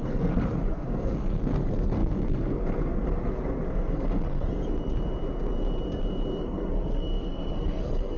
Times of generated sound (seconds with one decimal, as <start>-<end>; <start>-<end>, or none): 0.0-4.6; 6.4-8.2